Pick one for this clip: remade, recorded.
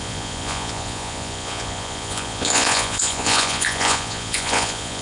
remade